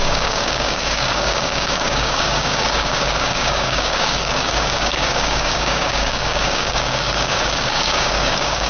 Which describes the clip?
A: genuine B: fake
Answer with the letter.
B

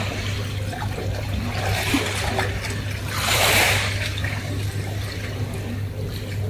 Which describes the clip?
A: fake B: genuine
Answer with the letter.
A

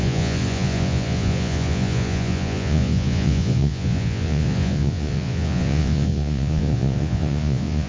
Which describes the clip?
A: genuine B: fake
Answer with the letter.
B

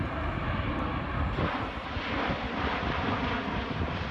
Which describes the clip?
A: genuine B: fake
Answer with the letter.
A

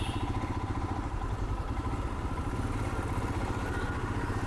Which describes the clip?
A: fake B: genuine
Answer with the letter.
A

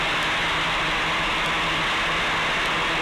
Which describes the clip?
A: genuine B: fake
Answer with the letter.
A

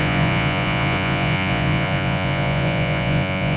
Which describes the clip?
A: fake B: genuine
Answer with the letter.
A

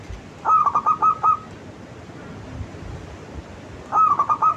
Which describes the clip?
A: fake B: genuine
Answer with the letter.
B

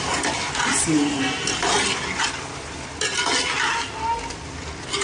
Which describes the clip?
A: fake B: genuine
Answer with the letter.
B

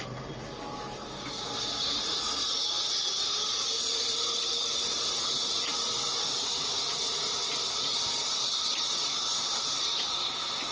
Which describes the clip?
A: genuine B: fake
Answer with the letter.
A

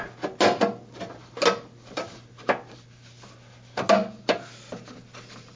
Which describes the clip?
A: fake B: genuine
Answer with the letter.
B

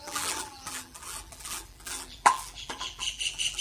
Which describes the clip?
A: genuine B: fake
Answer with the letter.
B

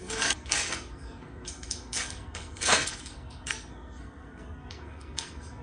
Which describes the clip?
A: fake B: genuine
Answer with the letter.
A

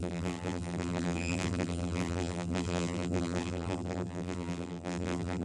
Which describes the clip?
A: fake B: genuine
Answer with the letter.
A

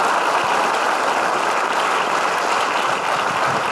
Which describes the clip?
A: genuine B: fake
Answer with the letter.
A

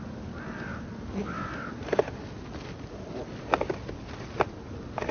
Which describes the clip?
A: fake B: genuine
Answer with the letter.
B